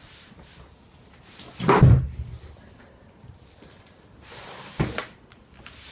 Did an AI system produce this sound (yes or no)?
no